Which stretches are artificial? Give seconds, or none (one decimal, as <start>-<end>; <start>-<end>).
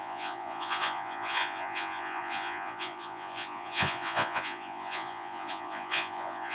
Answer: 0.0-6.5